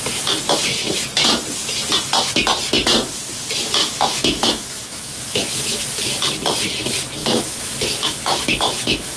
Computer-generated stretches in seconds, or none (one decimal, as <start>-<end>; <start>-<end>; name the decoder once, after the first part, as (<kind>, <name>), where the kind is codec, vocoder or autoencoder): 3.8-5.8 (autoencoder, DAC-VAE); 7.2-9.2